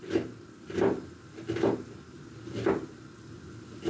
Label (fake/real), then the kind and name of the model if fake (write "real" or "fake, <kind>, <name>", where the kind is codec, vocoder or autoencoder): real